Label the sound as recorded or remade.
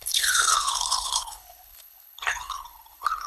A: remade